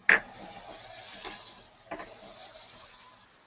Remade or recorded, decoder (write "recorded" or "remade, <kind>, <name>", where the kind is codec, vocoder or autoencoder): recorded